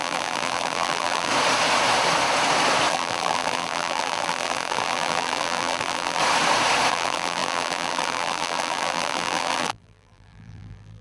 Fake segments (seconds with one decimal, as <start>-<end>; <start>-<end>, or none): 0.0-1.3; 2.9-6.2; 6.9-11.0